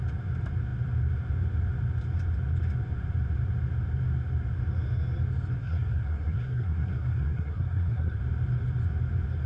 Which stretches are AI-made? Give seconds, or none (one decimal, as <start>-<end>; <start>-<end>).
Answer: 5.6-8.2